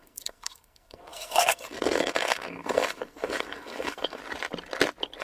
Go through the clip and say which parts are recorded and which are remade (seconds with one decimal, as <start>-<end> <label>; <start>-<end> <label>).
0.0-4.2 remade; 4.2-5.2 recorded